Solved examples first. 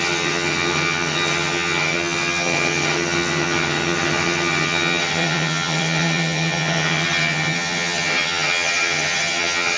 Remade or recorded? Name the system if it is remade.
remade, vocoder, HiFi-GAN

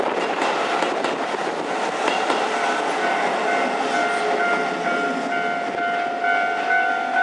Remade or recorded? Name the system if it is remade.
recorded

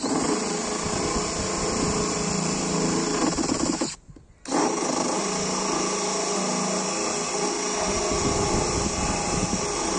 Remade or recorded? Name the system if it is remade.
recorded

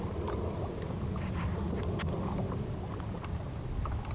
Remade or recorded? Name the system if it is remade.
recorded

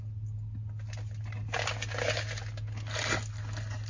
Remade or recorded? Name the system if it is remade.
recorded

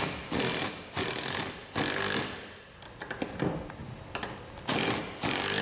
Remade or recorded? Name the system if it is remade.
recorded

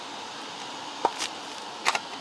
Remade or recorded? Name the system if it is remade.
remade, vocoder, BigVGAN v2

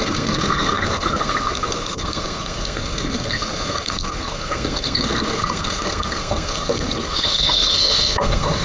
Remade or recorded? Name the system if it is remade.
remade, codec, SNAC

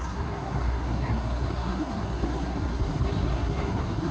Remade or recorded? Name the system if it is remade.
remade, codec, SNAC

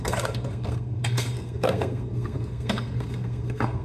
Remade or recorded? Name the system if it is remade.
remade, codec, SNAC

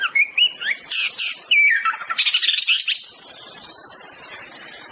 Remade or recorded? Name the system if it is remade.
recorded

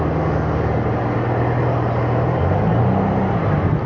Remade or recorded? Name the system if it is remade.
recorded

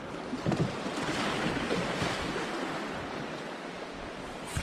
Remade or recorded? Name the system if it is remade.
recorded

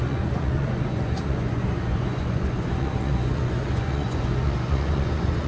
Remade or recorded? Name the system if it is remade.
remade, vocoder, Vocos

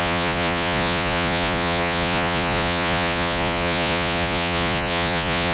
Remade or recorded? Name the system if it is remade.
remade, vocoder, Vocos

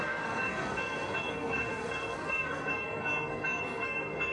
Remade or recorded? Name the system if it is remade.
remade, codec, SNAC